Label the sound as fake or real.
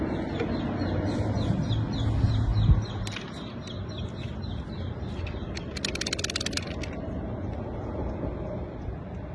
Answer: real